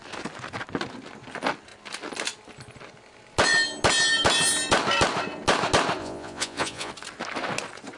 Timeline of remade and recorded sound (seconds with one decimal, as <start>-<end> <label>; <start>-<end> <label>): 0.0-6.0 recorded; 6.0-6.9 remade; 6.9-8.0 recorded